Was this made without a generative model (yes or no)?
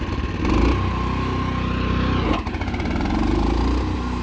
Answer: yes